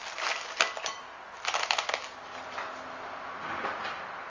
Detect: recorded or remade recorded